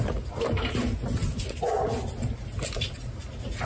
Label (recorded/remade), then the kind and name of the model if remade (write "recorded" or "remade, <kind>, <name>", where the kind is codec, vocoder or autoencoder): recorded